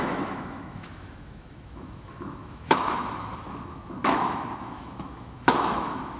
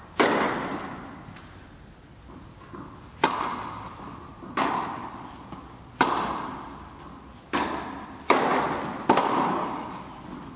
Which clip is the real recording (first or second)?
second